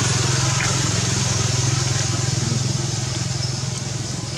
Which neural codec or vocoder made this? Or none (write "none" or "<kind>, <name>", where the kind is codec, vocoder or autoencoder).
none